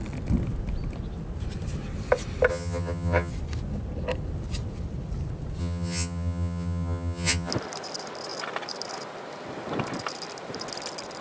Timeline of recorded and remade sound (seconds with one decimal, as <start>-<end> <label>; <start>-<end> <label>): 0.0-2.5 recorded; 2.5-3.3 remade; 3.3-5.6 recorded; 5.6-7.5 remade; 7.5-11.2 recorded